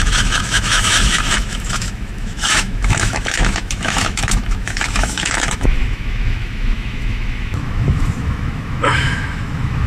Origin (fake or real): fake